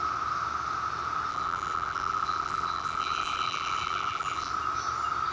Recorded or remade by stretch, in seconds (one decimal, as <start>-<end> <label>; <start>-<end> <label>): 0.0-1.3 recorded; 1.3-4.5 remade; 4.5-5.3 recorded